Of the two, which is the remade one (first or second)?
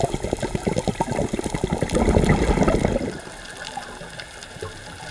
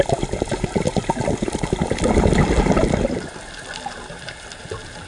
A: second